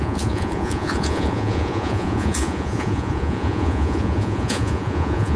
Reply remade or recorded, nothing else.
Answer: remade